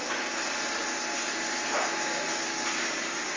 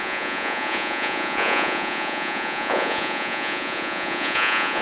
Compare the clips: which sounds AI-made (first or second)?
second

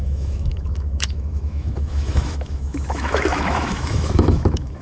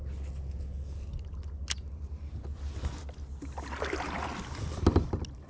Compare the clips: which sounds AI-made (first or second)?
first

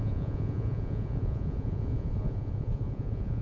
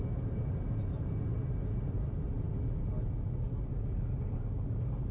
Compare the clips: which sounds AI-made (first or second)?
first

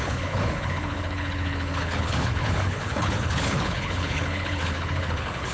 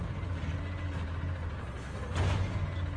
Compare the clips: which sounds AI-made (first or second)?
first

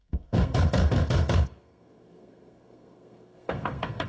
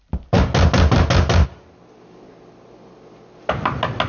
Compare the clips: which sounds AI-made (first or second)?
first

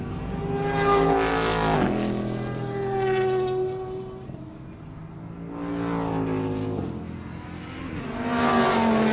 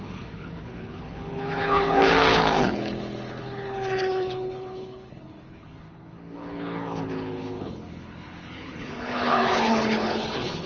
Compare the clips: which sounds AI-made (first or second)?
second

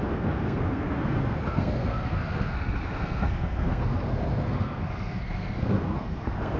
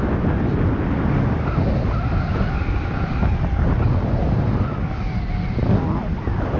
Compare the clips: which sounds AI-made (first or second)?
first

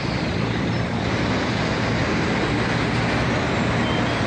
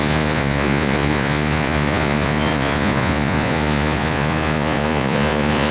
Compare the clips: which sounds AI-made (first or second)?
second